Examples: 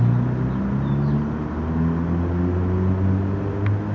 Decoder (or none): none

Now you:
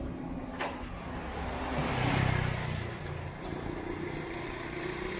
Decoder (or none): none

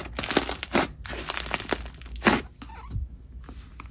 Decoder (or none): none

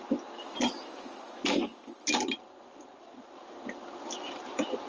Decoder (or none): none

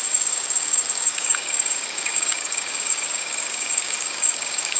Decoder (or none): codec, DAC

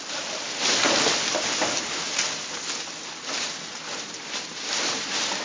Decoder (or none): none